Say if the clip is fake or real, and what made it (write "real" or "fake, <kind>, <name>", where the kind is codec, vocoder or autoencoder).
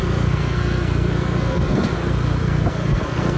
fake, codec, SNAC